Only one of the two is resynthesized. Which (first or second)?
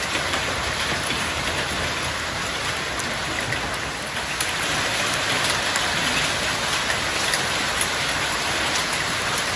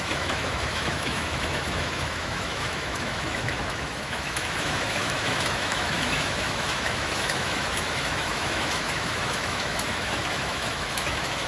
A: second